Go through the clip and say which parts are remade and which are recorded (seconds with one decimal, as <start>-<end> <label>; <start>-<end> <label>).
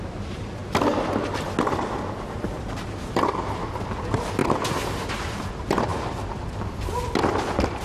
0.0-7.8 recorded